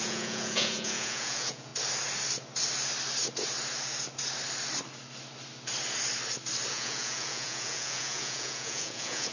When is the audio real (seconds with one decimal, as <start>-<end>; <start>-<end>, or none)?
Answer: 1.7-6.7